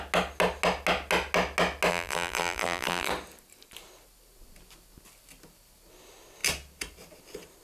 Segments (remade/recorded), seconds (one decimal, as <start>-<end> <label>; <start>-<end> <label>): 0.0-1.9 recorded; 1.9-3.1 remade; 3.1-7.6 recorded